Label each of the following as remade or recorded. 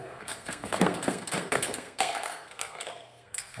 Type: remade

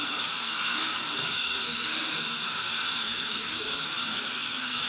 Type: remade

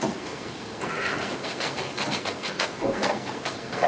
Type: remade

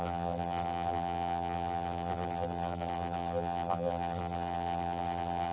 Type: remade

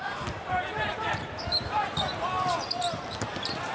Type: recorded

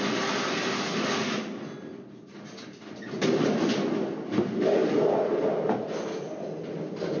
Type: recorded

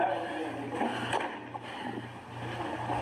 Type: recorded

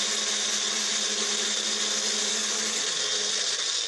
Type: recorded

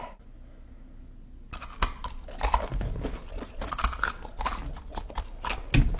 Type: recorded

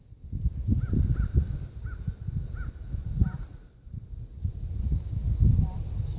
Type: recorded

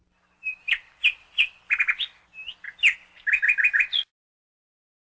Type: recorded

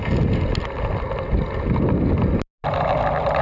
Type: recorded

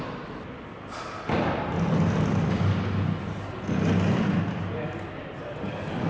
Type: recorded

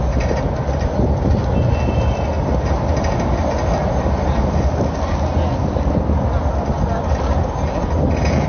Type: recorded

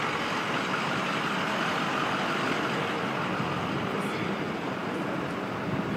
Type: remade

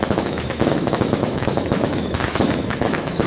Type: remade